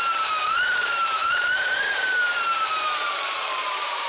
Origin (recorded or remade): remade